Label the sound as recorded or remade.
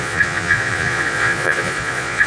remade